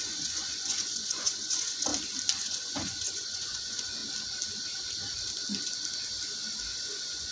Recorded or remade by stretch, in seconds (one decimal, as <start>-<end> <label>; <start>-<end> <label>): 0.0-1.9 remade; 1.9-2.4 recorded; 2.4-4.0 remade; 4.0-6.8 recorded; 6.8-7.3 remade